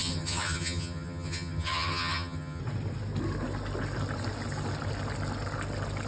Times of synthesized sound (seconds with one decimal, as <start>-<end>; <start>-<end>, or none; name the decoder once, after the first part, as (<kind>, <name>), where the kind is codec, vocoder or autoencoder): 0.0-2.6 (vocoder, HiFi-GAN)